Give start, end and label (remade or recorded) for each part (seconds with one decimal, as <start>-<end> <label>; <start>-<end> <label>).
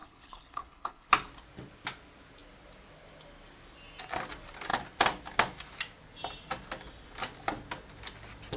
0.0-1.1 remade; 1.1-8.6 recorded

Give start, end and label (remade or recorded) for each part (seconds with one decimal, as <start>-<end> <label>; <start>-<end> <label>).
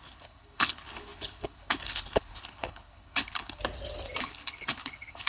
0.0-3.6 remade; 3.6-4.2 recorded; 4.2-5.3 remade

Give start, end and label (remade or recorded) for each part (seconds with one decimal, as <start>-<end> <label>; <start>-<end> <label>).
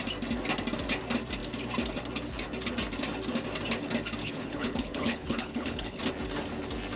0.0-4.2 recorded; 4.2-6.0 remade; 6.0-7.0 recorded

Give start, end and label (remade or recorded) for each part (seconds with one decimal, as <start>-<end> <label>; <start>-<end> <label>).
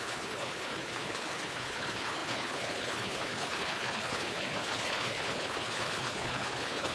0.0-6.9 remade